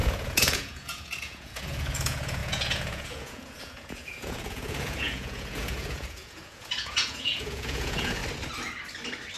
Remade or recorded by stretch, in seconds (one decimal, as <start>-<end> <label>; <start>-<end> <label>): 0.0-8.2 remade; 8.2-9.4 recorded